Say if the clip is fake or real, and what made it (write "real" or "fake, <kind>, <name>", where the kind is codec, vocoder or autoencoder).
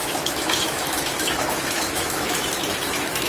fake, autoencoder, DAC-VAE